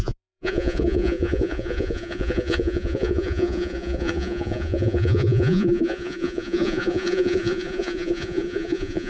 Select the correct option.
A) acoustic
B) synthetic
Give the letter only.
B